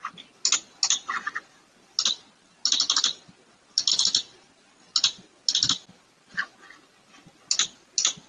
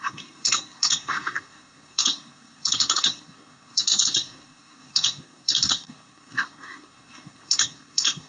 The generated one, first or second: second